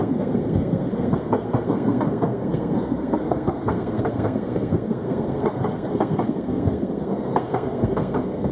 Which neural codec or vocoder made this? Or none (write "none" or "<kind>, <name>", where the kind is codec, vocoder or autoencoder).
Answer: codec, SNAC